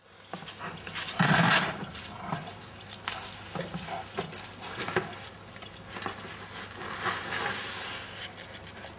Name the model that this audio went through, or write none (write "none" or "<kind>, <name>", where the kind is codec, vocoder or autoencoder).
none